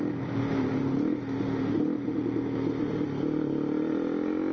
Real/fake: real